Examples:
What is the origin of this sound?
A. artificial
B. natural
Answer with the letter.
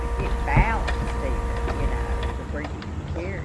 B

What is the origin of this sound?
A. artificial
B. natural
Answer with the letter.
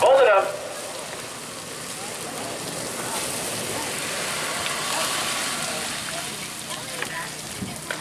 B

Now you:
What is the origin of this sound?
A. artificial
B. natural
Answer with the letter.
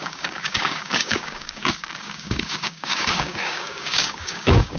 A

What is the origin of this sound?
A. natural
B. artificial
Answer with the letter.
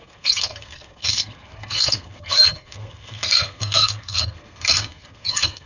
B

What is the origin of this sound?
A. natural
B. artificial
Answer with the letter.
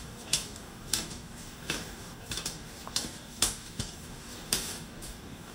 B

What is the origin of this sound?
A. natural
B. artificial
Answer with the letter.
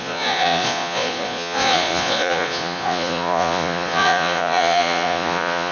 B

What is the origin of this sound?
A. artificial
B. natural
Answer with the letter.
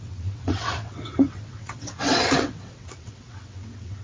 A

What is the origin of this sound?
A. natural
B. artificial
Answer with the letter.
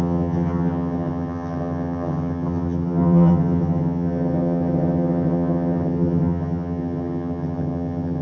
B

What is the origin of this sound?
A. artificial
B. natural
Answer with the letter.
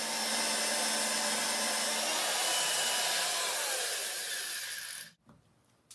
B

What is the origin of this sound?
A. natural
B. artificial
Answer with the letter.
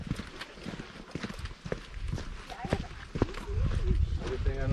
A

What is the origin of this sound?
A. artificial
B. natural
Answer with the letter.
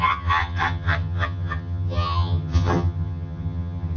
A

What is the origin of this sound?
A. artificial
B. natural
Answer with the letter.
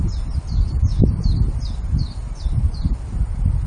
B